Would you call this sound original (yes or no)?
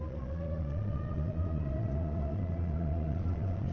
no